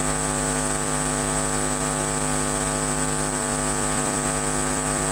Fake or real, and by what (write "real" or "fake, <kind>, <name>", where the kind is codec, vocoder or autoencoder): fake, vocoder, BigVGAN v2